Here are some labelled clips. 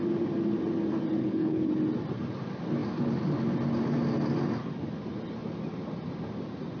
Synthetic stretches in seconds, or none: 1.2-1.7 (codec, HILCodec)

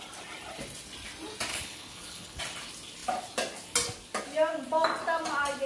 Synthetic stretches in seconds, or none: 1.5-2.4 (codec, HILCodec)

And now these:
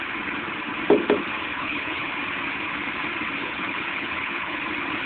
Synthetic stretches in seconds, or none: 1.5-2.1 (codec, HILCodec); 3.4-4.6